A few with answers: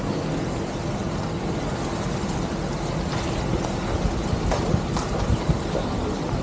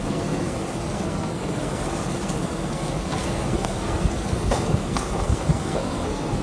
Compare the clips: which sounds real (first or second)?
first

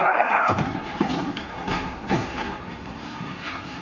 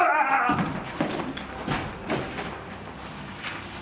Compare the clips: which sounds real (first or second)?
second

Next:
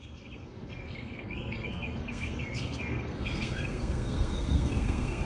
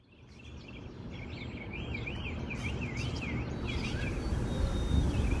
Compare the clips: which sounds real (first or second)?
second